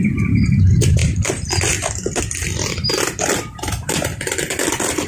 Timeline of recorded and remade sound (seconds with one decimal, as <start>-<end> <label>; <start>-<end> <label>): 0.0-1.0 recorded; 1.0-2.2 remade; 2.2-4.1 recorded; 4.1-5.1 remade